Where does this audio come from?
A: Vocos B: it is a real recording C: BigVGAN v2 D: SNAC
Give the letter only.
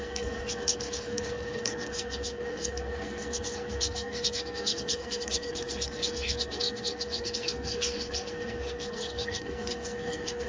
D